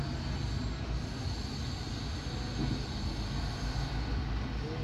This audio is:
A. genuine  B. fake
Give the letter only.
A